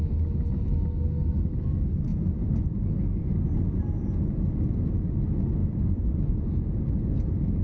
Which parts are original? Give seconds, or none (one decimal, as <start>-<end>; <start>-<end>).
0.0-2.1; 2.8-5.6; 6.3-7.6